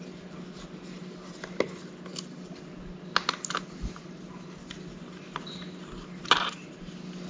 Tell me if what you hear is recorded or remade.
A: recorded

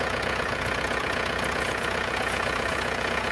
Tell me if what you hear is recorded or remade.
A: remade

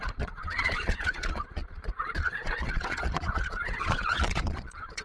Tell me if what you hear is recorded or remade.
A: remade